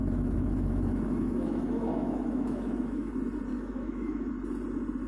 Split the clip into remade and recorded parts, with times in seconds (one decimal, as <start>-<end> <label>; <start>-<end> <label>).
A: 0.0-3.1 remade; 3.1-3.5 recorded; 3.5-4.3 remade; 4.3-5.1 recorded